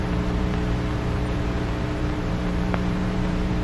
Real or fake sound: fake